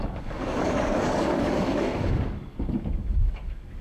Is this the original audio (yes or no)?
no